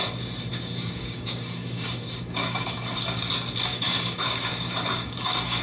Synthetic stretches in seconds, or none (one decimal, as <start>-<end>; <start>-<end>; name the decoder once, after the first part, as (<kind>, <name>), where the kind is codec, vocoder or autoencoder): 0.5-3.3 (codec, DAC); 3.7-5.6